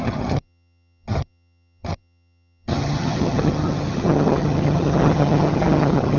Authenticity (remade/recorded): remade